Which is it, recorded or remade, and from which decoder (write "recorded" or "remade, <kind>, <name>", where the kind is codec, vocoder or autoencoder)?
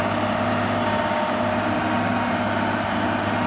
recorded